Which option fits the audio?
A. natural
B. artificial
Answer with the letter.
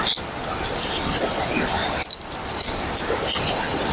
A